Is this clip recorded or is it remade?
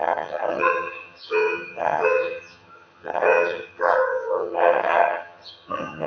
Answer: remade